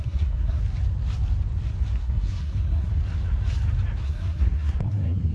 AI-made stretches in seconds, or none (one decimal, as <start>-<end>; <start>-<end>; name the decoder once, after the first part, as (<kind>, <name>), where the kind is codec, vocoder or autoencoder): 0.0-0.6 (codec, SNAC); 2.0-3.0; 4.0-5.3